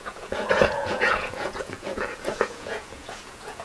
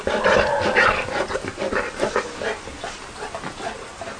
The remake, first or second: first